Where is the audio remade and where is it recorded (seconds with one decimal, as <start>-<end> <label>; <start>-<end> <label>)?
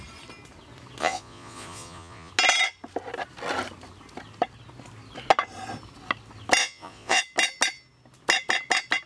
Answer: 0.0-1.0 recorded; 1.0-2.3 remade; 2.3-6.6 recorded; 6.6-7.2 remade; 7.2-9.1 recorded